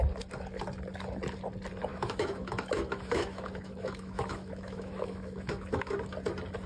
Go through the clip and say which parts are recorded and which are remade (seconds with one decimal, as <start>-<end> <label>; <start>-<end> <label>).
0.0-1.9 recorded; 1.9-5.9 remade; 5.9-6.7 recorded